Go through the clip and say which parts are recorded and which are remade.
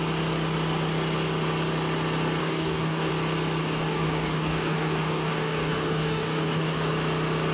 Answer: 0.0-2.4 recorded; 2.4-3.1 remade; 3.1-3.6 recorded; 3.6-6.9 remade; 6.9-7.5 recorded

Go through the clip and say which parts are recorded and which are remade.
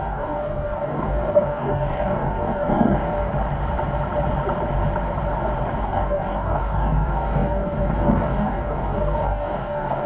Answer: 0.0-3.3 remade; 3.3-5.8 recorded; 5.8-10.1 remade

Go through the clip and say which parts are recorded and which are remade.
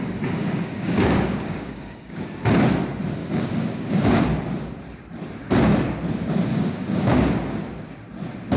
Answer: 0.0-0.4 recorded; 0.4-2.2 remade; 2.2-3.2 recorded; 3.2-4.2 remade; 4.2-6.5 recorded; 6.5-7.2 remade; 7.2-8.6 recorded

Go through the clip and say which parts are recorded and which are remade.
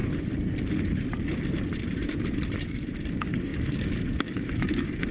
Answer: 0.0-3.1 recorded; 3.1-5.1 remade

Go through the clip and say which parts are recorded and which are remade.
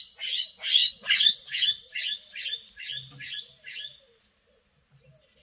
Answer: 0.0-5.4 recorded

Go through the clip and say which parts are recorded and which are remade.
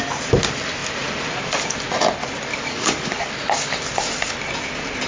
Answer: 0.0-2.5 recorded; 2.5-3.3 remade; 3.3-5.1 recorded